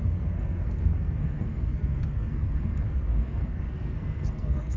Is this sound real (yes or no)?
no